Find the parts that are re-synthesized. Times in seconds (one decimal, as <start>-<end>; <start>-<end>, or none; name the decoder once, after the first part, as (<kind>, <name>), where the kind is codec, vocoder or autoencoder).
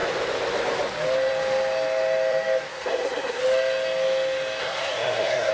2.7-3.4 (codec, SNAC); 4.6-5.5